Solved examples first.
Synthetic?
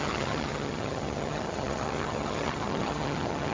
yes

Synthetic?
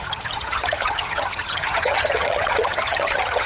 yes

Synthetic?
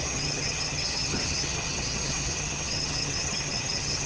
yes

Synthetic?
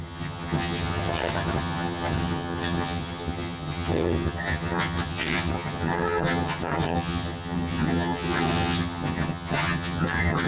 yes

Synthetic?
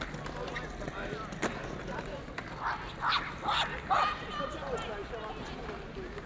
no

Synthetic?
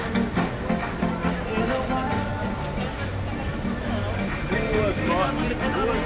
no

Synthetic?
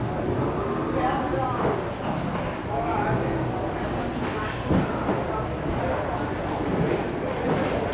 no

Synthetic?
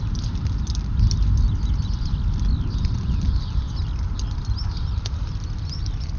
no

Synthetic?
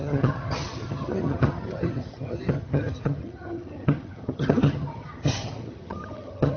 yes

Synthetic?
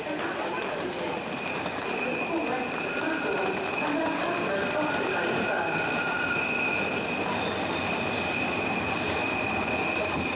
no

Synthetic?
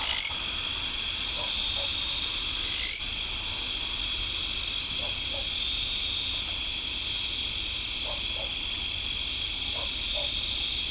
no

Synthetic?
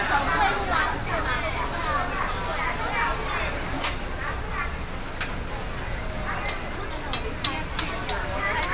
no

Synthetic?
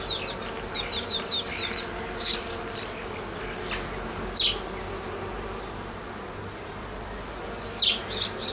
no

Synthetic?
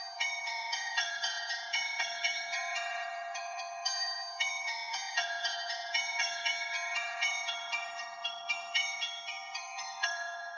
yes